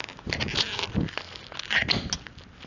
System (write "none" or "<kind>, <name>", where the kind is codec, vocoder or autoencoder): none